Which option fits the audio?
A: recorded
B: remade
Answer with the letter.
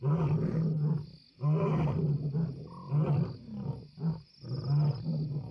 A